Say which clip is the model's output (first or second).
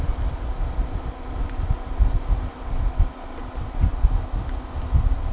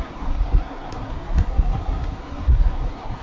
second